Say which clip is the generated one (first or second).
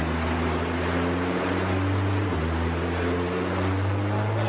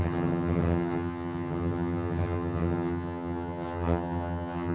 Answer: second